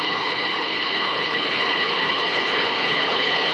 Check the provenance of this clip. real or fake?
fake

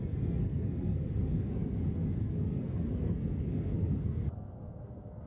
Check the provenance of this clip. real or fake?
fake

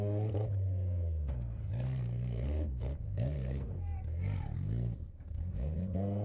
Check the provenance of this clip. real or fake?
fake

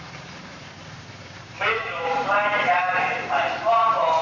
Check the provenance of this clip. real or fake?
fake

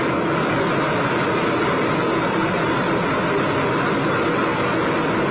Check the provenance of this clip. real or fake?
real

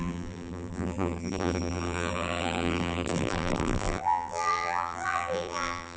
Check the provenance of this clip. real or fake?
fake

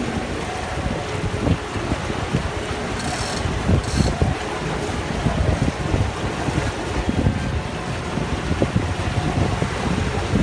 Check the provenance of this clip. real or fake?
real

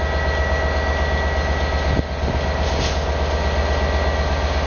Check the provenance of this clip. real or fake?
real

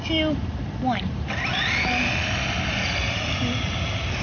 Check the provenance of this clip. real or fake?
real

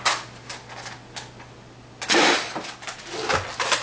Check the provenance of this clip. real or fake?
real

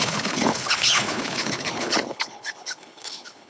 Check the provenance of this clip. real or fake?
fake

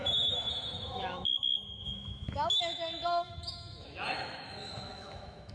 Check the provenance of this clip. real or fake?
fake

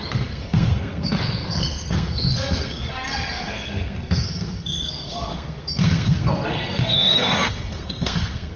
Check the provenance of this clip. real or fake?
fake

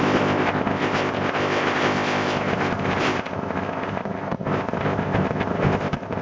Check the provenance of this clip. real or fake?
fake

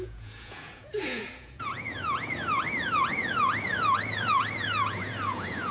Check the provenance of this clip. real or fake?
fake